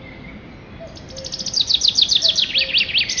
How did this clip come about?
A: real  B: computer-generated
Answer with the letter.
A